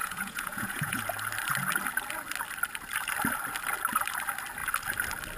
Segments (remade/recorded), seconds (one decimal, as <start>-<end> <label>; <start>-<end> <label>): 0.0-1.0 remade; 1.0-5.4 recorded